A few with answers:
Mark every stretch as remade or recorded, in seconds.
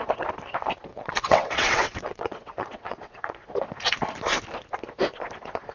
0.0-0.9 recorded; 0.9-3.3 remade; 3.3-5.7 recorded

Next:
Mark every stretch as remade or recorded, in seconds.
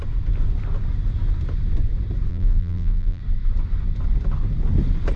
0.0-2.3 recorded; 2.3-3.2 remade; 3.2-5.2 recorded